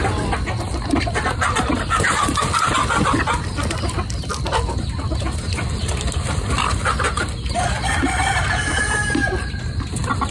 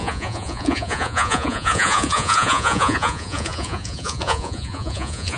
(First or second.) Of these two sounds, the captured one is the first